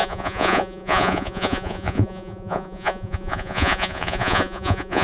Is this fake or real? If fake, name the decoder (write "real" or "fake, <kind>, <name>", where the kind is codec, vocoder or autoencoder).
fake, vocoder, Vocos